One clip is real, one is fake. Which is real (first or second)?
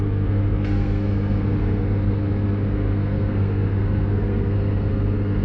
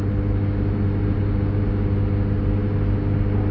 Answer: second